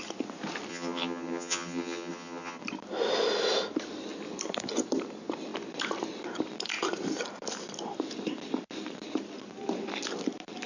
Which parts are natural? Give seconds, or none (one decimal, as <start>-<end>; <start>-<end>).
0.0-0.7; 2.6-10.7

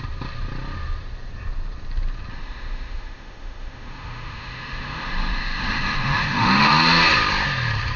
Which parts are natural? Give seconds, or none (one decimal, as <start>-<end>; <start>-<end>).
0.0-2.3; 6.7-8.0

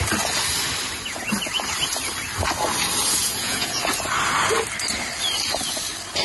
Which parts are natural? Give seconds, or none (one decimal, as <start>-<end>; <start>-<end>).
0.0-3.2; 3.8-6.2

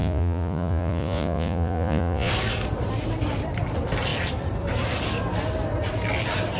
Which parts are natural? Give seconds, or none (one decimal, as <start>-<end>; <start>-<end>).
2.3-6.6